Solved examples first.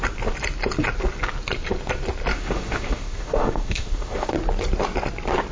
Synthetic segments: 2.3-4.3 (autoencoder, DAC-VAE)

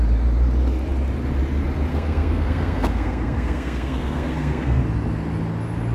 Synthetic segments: 1.9-4.8 (codec, SNAC)